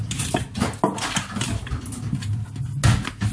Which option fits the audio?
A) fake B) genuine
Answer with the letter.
B